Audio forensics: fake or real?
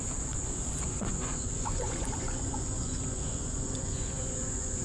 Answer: fake